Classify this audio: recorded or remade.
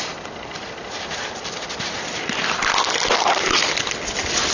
recorded